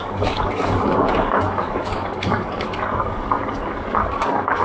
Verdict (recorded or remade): remade